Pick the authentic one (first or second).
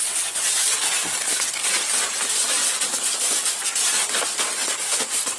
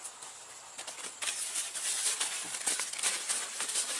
first